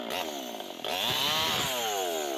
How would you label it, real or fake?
real